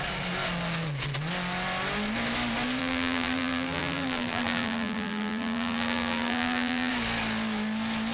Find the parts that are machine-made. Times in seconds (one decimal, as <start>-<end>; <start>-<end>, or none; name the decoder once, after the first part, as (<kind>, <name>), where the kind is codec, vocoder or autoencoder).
2.8-6.9 (vocoder, BigVGAN v2)